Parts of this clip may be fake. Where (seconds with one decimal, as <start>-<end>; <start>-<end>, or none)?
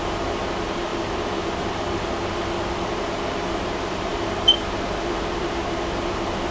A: 0.0-6.5